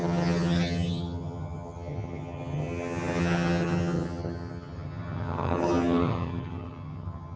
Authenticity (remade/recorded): remade